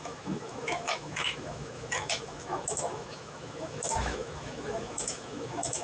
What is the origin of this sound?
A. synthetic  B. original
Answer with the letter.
A